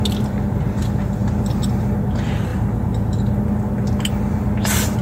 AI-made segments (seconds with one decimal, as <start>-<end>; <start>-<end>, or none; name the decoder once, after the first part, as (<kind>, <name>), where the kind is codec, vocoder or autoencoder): none